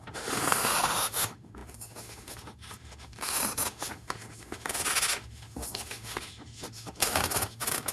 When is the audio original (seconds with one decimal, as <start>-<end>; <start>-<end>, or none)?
none